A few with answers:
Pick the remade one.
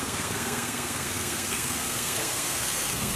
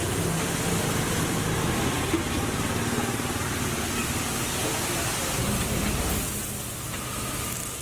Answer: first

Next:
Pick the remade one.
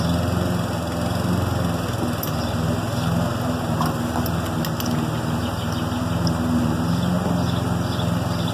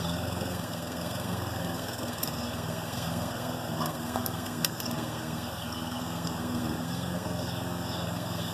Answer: second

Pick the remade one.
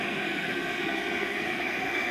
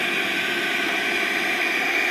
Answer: first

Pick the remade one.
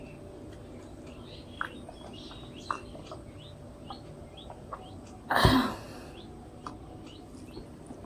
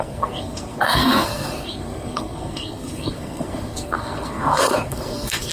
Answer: second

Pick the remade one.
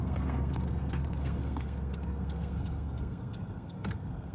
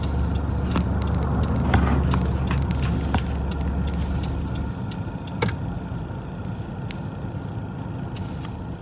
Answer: first